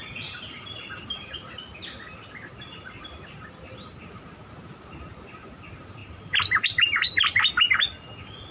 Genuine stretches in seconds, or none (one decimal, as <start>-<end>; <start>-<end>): 0.0-0.8; 1.4-6.0; 7.5-8.5